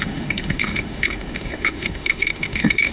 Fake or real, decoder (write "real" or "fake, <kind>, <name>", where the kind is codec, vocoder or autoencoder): fake, autoencoder, DAC-VAE